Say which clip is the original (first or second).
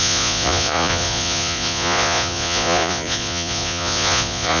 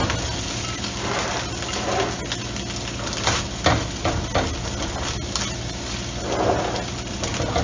second